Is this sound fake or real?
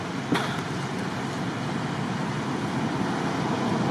real